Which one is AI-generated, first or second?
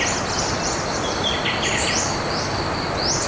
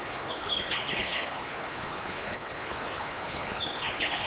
second